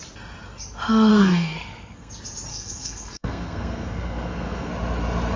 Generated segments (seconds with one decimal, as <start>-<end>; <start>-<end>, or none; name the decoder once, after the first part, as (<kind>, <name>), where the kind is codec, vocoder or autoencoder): 1.1-2.1 (codec, SNAC); 2.5-4.7